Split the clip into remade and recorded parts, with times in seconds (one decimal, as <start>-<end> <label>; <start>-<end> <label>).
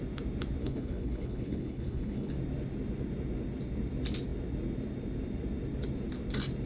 0.0-0.6 recorded; 0.6-2.3 remade; 2.3-6.7 recorded